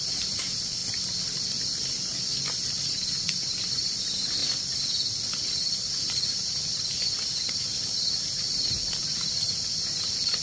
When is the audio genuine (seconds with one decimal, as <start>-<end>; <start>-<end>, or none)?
0.8-3.2; 4.4-9.0